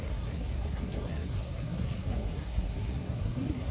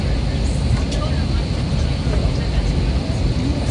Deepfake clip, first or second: first